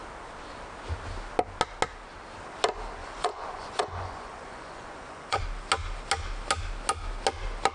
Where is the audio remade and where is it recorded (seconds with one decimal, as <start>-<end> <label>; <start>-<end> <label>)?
0.0-3.0 recorded; 3.0-5.4 remade; 5.4-7.7 recorded